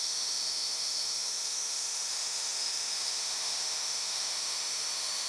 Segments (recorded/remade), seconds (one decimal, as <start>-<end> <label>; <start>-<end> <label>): 0.0-5.3 remade

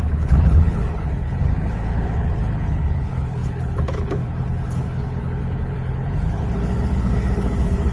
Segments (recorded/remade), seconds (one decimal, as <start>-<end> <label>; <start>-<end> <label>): 0.0-7.9 remade

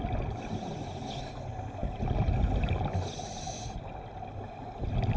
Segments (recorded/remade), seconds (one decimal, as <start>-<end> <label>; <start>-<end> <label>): 0.0-5.2 recorded

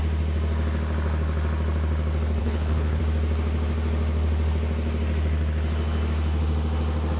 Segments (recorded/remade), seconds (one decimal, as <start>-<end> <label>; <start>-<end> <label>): 0.0-2.4 recorded; 2.4-3.0 remade; 3.0-7.2 recorded